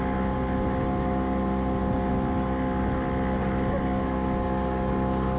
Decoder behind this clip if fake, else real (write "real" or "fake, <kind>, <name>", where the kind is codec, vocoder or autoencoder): real